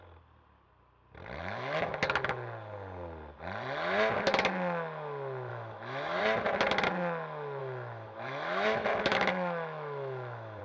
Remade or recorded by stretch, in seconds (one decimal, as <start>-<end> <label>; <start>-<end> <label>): 0.0-1.4 recorded; 1.4-1.9 remade; 1.9-5.5 recorded; 5.5-6.2 remade; 6.2-7.6 recorded; 7.6-10.6 remade